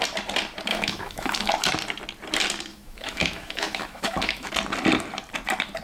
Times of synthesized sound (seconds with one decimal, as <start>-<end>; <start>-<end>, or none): 0.7-1.5; 2.7-4.5